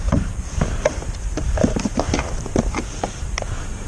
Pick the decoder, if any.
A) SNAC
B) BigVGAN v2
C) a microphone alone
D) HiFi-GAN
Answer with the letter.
B